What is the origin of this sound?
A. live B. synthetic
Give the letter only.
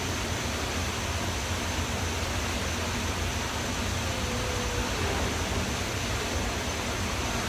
A